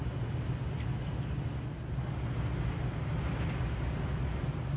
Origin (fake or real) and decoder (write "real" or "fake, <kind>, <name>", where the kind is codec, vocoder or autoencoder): real